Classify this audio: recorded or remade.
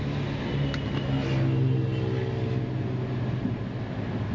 recorded